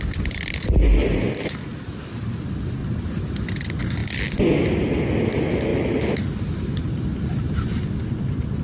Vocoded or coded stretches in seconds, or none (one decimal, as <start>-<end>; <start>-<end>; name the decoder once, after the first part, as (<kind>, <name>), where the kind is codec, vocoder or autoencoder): 5.7-6.4 (vocoder, BigVGAN v2)